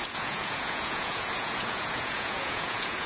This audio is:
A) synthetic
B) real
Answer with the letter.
A